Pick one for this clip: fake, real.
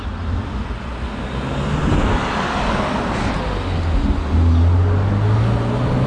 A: real